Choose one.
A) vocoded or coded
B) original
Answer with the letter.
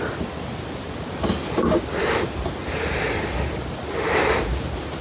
B